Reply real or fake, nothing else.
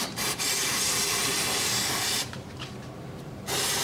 fake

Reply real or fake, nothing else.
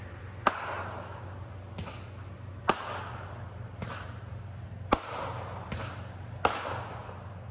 real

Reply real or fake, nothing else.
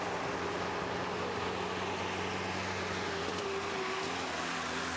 real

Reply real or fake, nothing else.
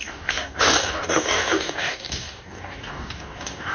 fake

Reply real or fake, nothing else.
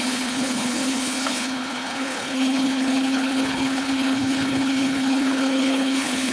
fake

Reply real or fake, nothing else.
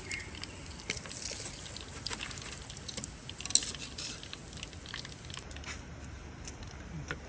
real